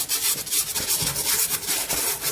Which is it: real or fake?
real